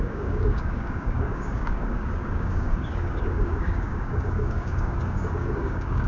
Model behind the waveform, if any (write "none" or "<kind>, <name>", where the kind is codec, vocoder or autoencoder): codec, DAC